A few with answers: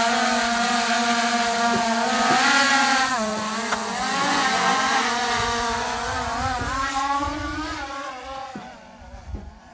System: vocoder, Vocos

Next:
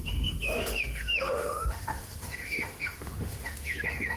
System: autoencoder, DAC-VAE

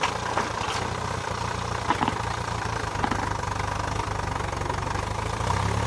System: none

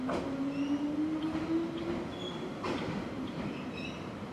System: none